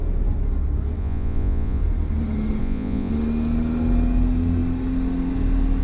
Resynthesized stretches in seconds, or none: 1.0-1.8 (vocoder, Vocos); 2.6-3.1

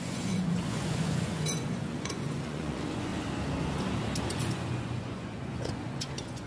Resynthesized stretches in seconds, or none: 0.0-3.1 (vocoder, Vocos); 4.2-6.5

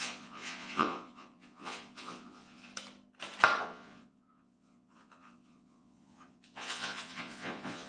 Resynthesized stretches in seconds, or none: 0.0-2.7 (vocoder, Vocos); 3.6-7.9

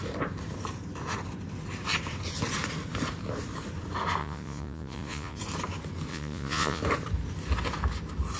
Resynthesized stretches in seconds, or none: 4.2-5.4 (vocoder, Vocos); 6.1-6.8

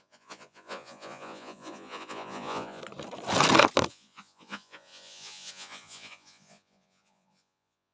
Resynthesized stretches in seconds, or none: 0.0-2.8 (vocoder, Vocos); 3.9-7.9

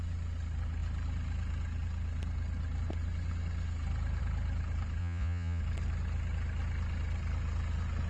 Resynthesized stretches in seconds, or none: 5.0-5.6 (vocoder, Vocos)

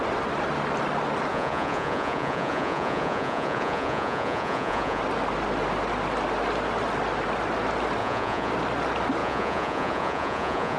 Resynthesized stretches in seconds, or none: 1.3-5.0 (vocoder, Vocos); 8.0-8.5; 9.2-10.8